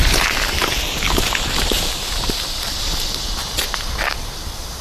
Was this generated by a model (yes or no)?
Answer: yes